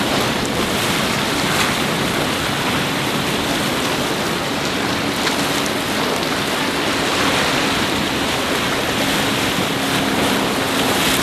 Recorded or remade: recorded